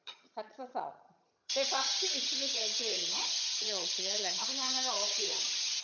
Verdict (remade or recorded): remade